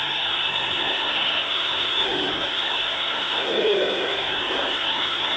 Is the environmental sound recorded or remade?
remade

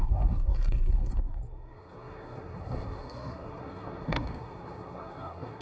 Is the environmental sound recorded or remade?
remade